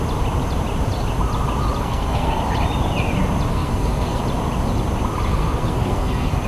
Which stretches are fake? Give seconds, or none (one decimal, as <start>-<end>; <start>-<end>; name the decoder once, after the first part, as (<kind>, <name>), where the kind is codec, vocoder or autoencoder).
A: 1.8-2.4 (codec, SNAC); 3.5-4.2; 5.3-6.5